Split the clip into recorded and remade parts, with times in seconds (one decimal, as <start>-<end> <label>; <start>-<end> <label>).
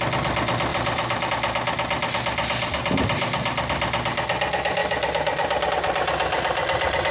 0.0-0.7 recorded; 0.7-1.3 remade; 1.3-7.1 recorded